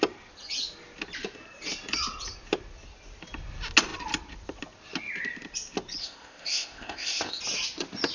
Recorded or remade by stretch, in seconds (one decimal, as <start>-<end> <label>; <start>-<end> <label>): 0.0-6.0 recorded; 6.0-7.4 remade; 7.4-8.1 recorded